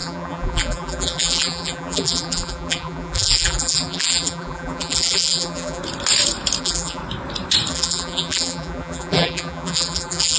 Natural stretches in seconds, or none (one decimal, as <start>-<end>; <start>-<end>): 5.8-6.6; 7.0-7.7